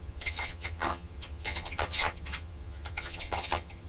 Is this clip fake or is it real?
fake